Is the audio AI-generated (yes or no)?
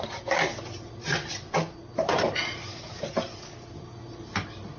no